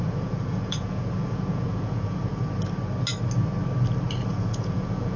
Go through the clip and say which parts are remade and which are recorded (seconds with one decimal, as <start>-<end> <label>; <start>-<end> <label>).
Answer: 0.0-2.3 remade; 2.3-4.3 recorded; 4.3-5.2 remade